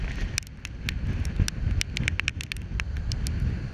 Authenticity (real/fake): real